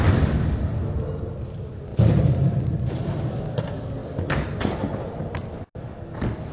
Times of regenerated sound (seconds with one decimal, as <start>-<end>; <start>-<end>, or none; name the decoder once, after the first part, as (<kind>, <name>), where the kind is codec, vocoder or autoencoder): 0.7-1.3 (vocoder, BigVGAN v2); 1.9-2.9